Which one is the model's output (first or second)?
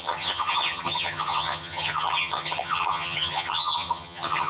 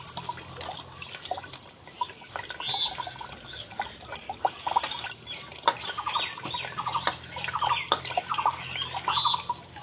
first